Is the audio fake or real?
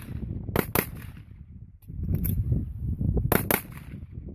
real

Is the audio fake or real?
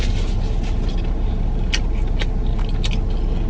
real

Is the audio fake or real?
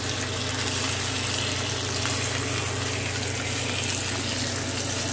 real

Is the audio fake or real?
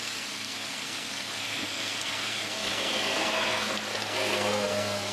fake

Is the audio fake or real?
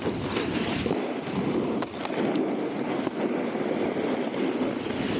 real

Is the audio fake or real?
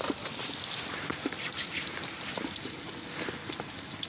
fake